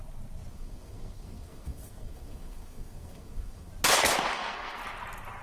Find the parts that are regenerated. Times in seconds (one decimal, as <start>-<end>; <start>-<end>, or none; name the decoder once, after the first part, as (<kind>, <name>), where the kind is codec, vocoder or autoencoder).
0.5-3.7 (codec, SNAC); 4.3-4.8